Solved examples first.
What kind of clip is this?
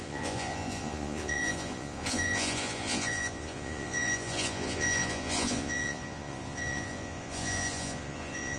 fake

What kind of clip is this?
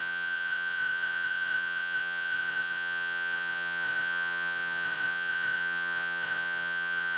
fake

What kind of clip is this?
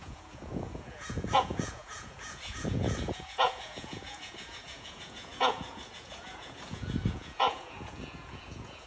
fake